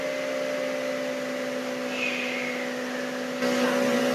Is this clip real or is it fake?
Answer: real